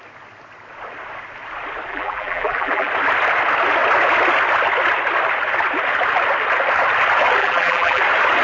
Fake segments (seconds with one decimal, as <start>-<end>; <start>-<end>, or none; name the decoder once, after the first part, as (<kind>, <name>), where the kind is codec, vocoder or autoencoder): 1.9-2.9 (vocoder, BigVGAN v2); 7.4-8.0